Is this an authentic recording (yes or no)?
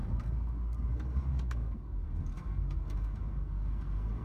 no